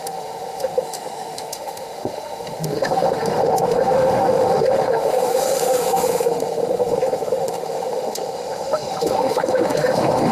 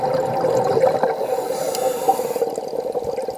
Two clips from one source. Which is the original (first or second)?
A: second